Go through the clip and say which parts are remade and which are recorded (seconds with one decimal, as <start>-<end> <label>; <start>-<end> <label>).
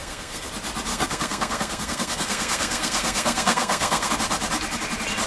0.0-0.5 remade; 0.5-0.9 recorded; 0.9-4.1 remade; 4.1-5.3 recorded